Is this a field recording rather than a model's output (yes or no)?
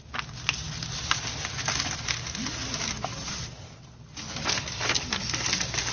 yes